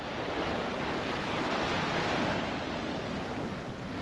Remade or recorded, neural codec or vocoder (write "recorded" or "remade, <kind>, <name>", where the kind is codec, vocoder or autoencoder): recorded